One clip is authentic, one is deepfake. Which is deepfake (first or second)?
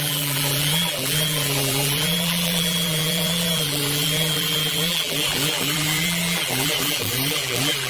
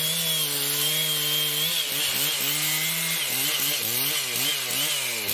first